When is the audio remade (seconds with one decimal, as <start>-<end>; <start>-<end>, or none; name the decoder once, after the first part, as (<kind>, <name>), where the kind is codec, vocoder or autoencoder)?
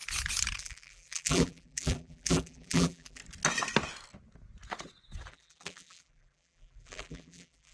0.6-3.2 (vocoder, BigVGAN v2); 5.3-7.7